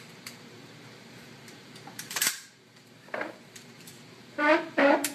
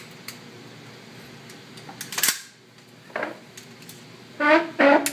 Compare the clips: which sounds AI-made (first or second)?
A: first